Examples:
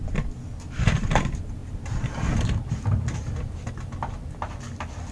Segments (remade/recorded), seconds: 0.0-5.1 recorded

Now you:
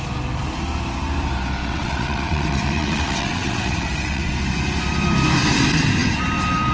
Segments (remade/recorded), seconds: 0.0-1.6 recorded; 1.6-4.3 remade; 4.3-6.7 recorded

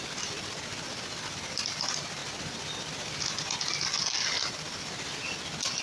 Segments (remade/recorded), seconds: 0.0-5.8 recorded

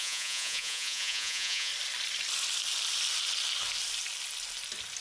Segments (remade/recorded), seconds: 0.0-1.7 remade; 1.7-5.0 recorded

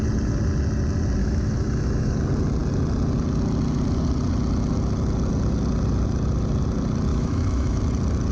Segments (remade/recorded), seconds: 0.0-1.2 recorded; 1.2-2.1 remade; 2.1-7.1 recorded; 7.1-7.8 remade; 7.8-8.3 recorded

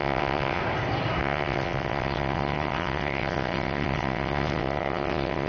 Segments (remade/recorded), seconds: 0.0-0.6 remade; 0.6-1.2 recorded; 1.2-5.5 remade

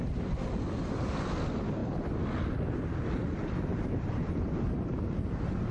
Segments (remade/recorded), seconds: 0.0-3.7 recorded; 3.7-5.7 remade